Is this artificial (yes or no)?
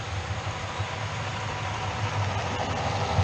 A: no